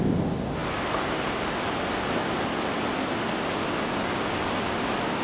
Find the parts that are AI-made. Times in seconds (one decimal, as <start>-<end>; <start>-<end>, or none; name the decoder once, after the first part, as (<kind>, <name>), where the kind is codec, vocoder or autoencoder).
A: none